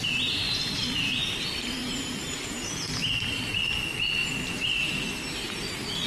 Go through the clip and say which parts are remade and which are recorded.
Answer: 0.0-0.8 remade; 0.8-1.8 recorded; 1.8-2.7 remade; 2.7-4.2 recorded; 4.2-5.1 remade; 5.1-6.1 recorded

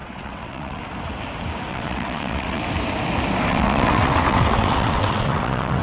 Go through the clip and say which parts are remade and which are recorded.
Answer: 0.0-0.8 remade; 0.8-1.7 recorded; 1.7-2.6 remade; 2.6-3.5 recorded; 3.5-5.8 remade

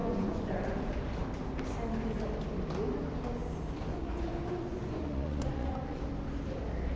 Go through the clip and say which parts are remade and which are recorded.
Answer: 0.0-0.6 remade; 0.6-3.9 recorded; 3.9-6.0 remade; 6.0-7.0 recorded

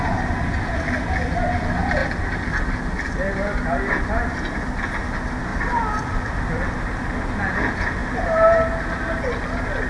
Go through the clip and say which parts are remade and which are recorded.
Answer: 0.0-5.5 recorded; 5.5-6.7 remade; 6.7-9.9 recorded

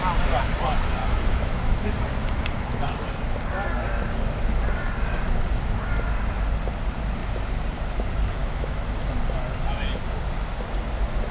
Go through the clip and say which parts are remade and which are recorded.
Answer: 0.0-1.0 recorded; 1.0-1.9 remade; 1.9-8.4 recorded; 8.4-9.1 remade; 9.1-11.3 recorded

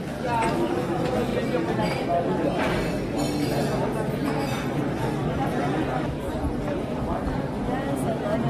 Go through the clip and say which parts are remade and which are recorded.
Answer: 0.0-8.5 recorded

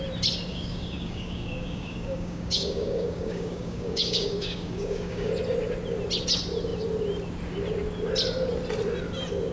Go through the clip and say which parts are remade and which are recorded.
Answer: 0.0-0.5 recorded; 0.5-5.3 remade; 5.3-9.5 recorded